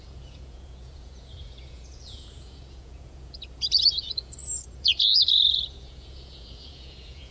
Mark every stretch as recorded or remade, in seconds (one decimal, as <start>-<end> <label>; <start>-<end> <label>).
0.0-7.3 remade